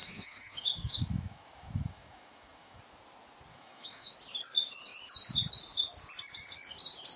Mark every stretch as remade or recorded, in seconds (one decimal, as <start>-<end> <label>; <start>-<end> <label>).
0.0-2.8 remade; 2.8-3.5 recorded; 3.5-4.1 remade; 4.1-7.2 recorded